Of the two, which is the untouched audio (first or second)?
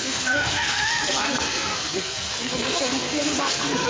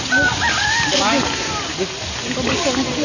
second